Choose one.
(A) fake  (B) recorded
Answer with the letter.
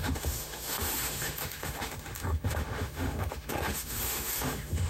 A